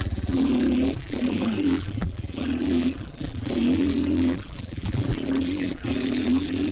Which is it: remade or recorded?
remade